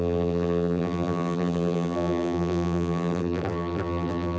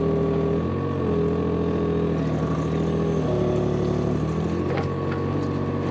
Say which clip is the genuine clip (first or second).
second